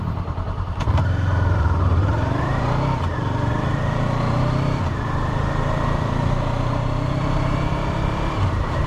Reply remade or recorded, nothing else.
remade